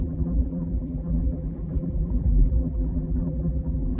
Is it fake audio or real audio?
fake